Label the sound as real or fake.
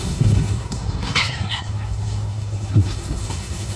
fake